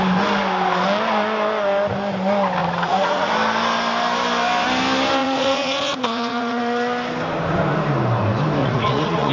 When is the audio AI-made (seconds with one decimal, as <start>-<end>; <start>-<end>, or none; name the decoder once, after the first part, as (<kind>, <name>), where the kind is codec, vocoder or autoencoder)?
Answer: 2.6-3.3 (vocoder, Vocos); 5.2-6.6; 8.6-9.3